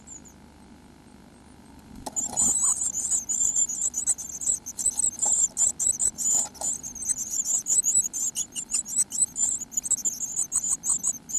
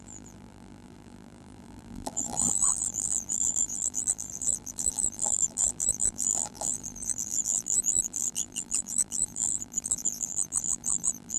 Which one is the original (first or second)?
first